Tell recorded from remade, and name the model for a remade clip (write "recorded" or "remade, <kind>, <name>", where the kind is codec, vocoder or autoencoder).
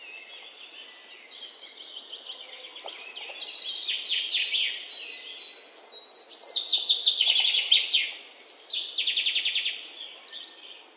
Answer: recorded